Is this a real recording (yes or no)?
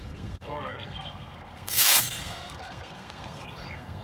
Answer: no